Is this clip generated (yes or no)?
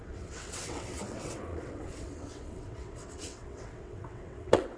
yes